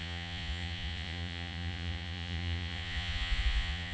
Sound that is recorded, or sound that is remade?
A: remade